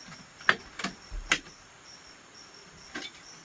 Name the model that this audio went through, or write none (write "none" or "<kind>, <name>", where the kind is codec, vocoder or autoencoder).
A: none